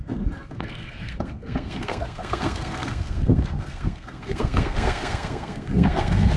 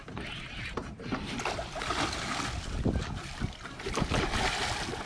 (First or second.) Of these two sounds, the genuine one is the second